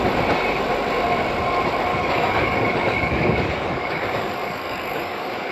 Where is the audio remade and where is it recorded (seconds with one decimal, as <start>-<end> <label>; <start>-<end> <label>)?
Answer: 0.0-1.9 recorded; 1.9-5.5 remade